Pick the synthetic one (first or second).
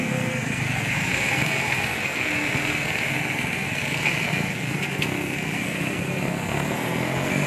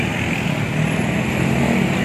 first